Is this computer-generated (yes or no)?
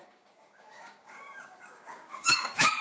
yes